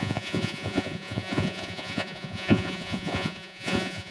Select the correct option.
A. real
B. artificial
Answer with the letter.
B